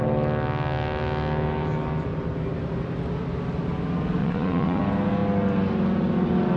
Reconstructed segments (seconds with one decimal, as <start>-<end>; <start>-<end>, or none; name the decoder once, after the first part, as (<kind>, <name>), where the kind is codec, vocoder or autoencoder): 4.2-4.8 (vocoder, Vocos)